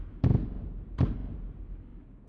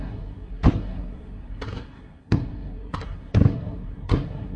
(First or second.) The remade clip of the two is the second